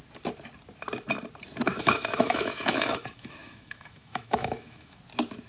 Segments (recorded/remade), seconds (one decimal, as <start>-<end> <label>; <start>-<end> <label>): 0.0-1.7 recorded; 1.7-5.0 remade; 5.0-5.5 recorded